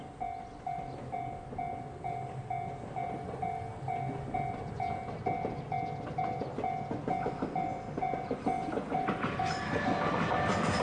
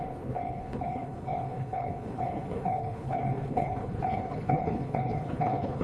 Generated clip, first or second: second